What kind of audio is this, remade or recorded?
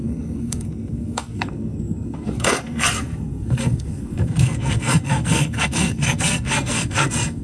remade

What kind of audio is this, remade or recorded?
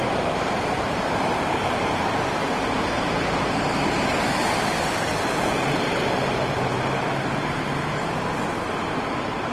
remade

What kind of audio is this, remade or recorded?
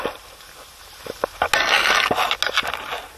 recorded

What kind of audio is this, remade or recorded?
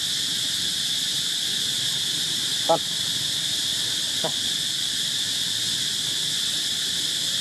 recorded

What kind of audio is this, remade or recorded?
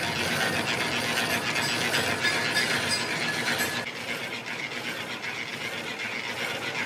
recorded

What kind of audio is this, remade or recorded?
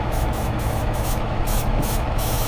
remade